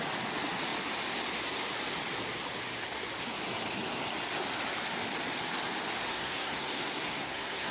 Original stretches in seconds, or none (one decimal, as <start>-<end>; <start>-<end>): 0.0-6.1